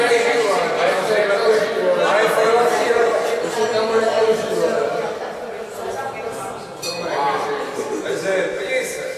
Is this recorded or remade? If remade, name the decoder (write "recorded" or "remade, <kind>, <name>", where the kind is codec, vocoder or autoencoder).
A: recorded